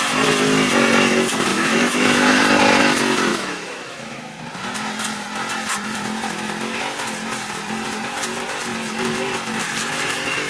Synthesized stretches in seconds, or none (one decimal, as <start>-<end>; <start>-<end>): 1.5-2.4; 3.3-4.4